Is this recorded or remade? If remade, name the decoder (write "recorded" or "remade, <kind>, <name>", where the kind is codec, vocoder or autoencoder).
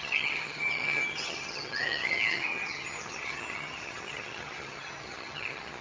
remade, vocoder, HiFi-GAN